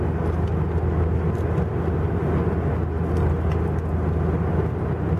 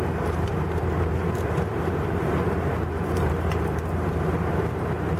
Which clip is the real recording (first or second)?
first